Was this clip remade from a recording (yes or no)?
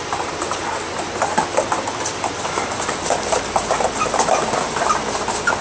no